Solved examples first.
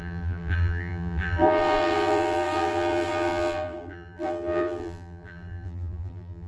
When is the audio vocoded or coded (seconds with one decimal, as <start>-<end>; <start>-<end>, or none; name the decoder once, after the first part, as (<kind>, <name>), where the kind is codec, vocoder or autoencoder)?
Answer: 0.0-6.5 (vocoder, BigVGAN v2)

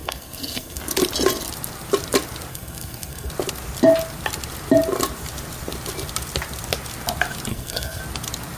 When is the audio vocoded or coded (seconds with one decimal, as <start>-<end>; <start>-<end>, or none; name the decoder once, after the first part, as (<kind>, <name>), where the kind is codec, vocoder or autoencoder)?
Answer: 0.0-0.8 (codec, SNAC); 2.5-3.3; 7.5-8.0

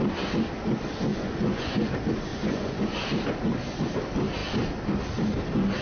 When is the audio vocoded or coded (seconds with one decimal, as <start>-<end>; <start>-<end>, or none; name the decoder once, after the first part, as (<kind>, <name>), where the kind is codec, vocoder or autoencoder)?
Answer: 1.1-1.9 (vocoder, Vocos); 2.3-2.8

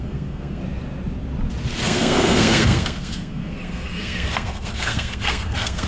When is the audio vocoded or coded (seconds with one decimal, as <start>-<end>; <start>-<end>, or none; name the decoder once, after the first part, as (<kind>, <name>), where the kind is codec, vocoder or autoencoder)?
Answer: 0.0-0.6 (codec, SNAC); 1.8-5.9